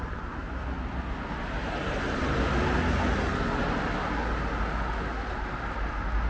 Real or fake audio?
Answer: real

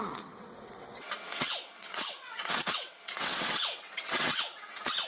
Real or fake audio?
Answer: fake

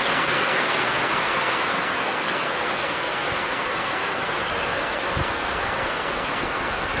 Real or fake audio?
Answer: fake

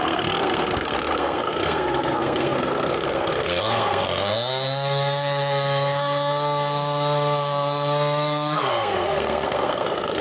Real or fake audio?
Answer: fake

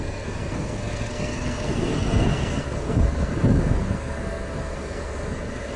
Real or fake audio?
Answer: fake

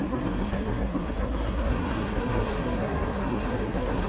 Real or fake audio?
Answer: fake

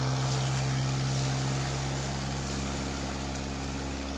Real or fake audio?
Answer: real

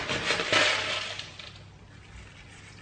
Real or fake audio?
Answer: real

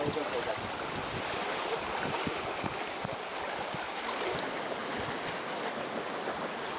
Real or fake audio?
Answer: real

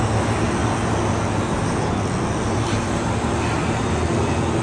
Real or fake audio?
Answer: real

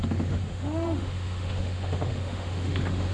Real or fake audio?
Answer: fake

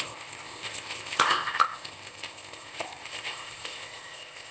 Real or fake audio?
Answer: fake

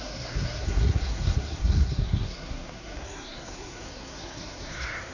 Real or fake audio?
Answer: fake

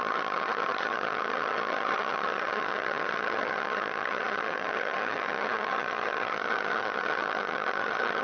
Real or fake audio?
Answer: fake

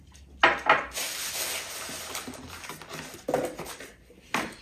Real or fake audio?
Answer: real